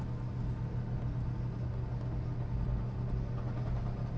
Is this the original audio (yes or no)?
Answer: yes